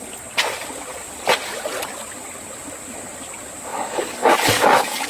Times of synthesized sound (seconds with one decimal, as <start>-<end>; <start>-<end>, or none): 3.7-5.1